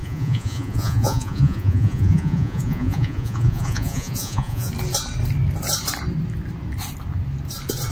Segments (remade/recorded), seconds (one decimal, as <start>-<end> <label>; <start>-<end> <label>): 0.0-4.7 remade; 4.7-7.9 recorded